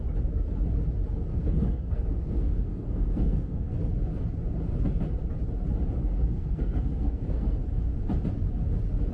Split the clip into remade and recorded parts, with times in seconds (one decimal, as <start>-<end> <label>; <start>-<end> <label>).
0.0-1.3 recorded; 1.3-3.9 remade; 3.9-6.0 recorded; 6.0-7.6 remade; 7.6-9.1 recorded